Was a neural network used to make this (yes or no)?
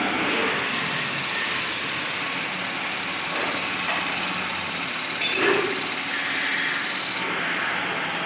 no